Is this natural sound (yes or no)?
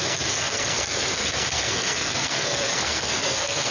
no